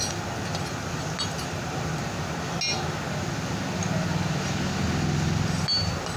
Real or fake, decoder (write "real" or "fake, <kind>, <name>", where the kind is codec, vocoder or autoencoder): real